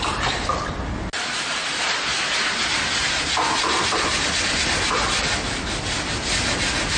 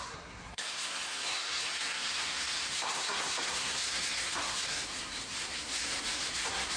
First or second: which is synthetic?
second